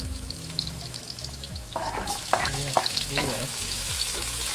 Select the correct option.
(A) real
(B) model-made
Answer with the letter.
B